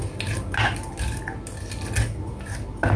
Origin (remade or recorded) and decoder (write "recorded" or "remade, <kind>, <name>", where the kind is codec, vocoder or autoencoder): recorded